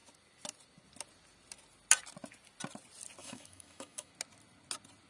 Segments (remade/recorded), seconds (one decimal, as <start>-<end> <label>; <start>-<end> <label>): 0.0-3.2 recorded; 3.2-4.1 remade; 4.1-5.1 recorded

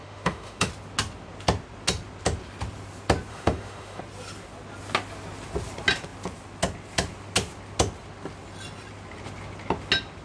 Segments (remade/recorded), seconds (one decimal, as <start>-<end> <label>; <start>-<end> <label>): 0.0-0.7 remade; 0.7-3.3 recorded; 3.3-4.0 remade; 4.0-10.2 recorded

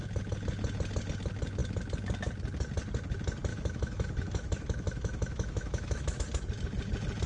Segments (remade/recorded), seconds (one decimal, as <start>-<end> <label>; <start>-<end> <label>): 0.0-3.5 recorded; 3.5-6.2 remade; 6.2-7.3 recorded